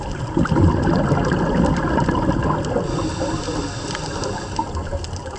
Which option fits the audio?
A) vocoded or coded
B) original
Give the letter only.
B